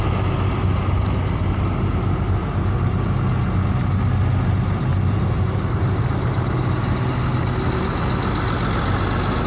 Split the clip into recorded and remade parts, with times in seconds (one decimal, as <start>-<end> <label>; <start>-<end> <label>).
0.0-9.5 recorded